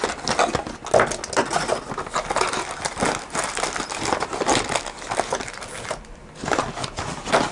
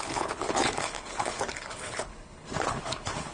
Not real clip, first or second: second